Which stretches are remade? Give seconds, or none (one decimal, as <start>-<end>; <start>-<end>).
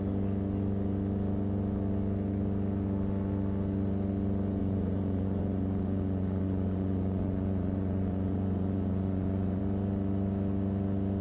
4.6-9.6